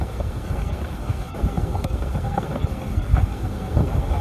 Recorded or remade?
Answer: remade